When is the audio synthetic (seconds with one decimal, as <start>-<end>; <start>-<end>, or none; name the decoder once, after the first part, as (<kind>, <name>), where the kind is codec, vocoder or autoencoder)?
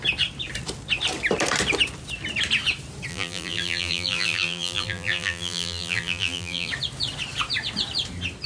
3.1-6.7 (vocoder, BigVGAN v2)